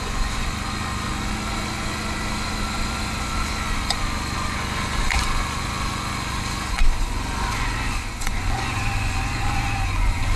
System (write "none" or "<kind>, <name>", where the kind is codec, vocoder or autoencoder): vocoder, Vocos